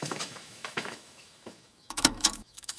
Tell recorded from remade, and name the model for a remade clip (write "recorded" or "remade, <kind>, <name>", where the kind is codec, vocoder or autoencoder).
remade, autoencoder, DAC-VAE